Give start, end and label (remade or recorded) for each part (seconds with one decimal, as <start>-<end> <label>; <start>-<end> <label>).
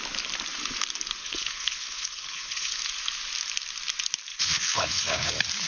0.0-1.2 recorded; 1.2-2.8 remade; 2.8-4.3 recorded; 4.3-5.3 remade; 5.3-5.7 recorded